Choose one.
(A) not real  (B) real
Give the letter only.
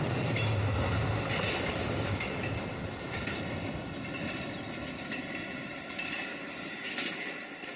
B